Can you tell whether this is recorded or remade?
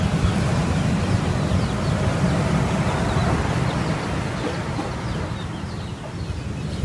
recorded